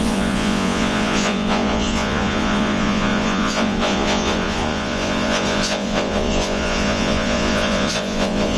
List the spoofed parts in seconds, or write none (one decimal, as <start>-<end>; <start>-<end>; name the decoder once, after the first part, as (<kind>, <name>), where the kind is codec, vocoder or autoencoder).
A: 0.0-8.6 (vocoder, Vocos)